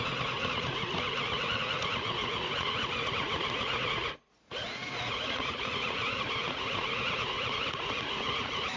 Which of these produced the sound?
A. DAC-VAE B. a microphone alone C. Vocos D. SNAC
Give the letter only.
C